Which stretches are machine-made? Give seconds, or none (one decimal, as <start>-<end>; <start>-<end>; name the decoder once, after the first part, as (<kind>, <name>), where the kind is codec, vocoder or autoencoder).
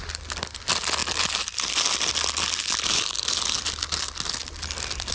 none